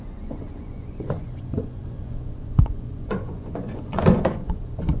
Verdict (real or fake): fake